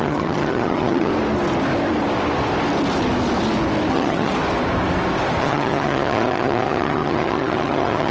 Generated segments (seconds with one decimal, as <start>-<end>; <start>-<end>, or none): 0.0-1.1; 3.9-4.3; 5.4-8.1